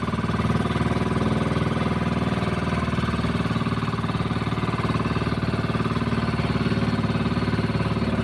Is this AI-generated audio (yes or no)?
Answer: no